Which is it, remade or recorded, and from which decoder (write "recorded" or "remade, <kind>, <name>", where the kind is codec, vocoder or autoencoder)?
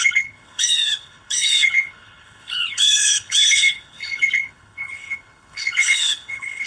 remade, codec, HILCodec